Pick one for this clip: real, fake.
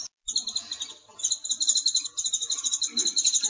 real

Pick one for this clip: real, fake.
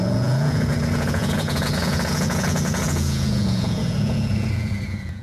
fake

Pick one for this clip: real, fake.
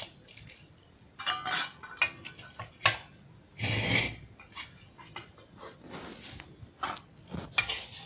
real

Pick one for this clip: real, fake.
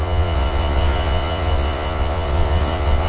fake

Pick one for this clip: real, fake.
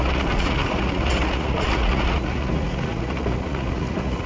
fake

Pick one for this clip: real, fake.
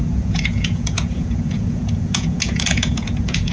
fake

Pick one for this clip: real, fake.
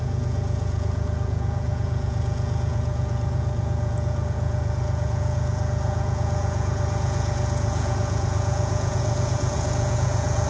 fake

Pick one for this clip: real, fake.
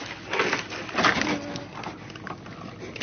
real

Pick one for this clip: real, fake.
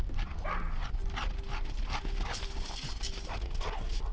real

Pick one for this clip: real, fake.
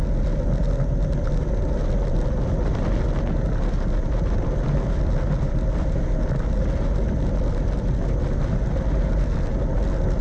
real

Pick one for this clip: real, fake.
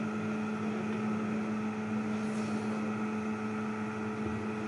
real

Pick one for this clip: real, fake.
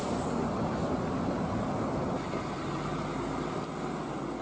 real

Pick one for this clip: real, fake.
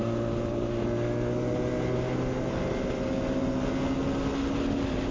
real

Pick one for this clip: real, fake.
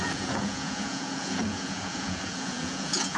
fake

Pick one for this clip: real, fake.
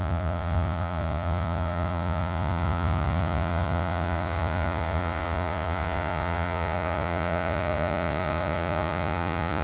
fake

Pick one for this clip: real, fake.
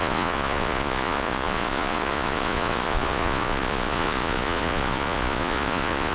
fake